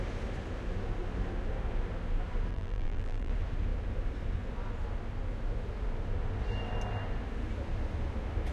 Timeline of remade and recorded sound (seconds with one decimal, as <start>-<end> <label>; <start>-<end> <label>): 0.0-2.5 recorded; 2.5-3.3 remade; 3.3-8.5 recorded